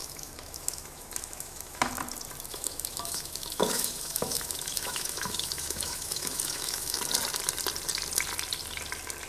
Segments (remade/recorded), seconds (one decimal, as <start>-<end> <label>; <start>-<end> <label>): 0.0-1.9 remade; 1.9-2.5 recorded; 2.5-7.0 remade; 7.0-9.3 recorded